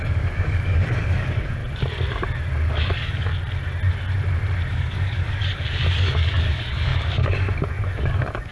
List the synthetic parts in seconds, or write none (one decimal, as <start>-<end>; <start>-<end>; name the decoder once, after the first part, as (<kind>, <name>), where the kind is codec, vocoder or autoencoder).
0.0-1.6 (codec, DAC); 2.7-3.3; 4.7-8.5